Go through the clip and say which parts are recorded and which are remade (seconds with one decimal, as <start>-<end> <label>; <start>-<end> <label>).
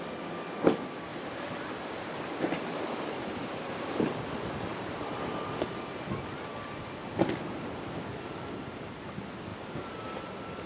0.0-1.1 recorded; 1.1-4.0 remade; 4.0-4.7 recorded; 4.7-6.1 remade; 6.1-10.7 recorded